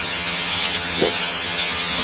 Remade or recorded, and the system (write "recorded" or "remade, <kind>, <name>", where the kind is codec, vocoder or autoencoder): remade, vocoder, HiFi-GAN